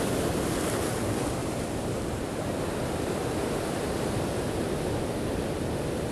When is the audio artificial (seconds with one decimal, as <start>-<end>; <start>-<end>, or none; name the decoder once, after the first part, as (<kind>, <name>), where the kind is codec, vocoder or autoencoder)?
1.4-2.6 (vocoder, BigVGAN v2)

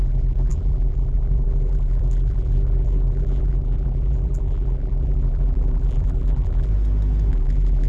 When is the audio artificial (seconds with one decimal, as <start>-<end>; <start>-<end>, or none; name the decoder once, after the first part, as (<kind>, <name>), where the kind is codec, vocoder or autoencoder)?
0.0-6.7 (vocoder, BigVGAN v2); 7.3-7.9

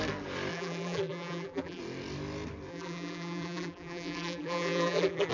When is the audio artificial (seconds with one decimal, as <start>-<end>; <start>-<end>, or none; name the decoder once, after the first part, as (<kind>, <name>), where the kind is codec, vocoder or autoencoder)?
0.5-1.8 (vocoder, BigVGAN v2); 2.7-5.3

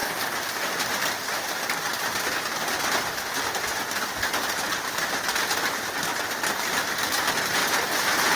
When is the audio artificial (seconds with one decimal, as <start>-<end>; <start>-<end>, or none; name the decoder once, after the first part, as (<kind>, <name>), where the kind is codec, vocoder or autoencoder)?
7.6-8.4 (vocoder, BigVGAN v2)

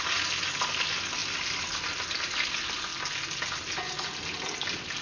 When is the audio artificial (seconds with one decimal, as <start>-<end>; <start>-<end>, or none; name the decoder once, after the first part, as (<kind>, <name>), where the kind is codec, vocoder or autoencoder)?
none

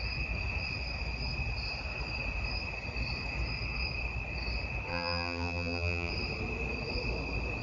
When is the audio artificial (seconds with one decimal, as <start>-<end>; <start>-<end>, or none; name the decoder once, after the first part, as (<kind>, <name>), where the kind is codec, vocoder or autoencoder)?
4.9-6.1 (vocoder, BigVGAN v2)